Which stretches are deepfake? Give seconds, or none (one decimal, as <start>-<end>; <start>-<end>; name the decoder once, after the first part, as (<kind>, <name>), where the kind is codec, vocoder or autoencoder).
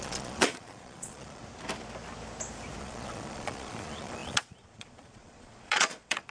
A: 0.0-1.4 (vocoder, Vocos); 2.8-6.3